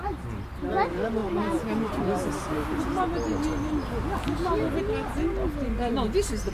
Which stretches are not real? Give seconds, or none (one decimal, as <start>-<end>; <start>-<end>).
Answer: none

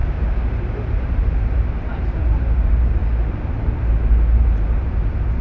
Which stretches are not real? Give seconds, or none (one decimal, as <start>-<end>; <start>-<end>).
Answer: 0.0-3.0; 4.3-5.4